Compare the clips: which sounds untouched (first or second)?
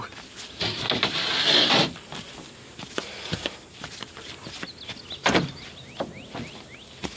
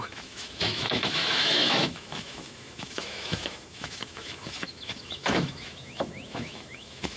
first